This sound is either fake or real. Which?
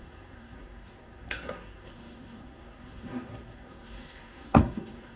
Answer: fake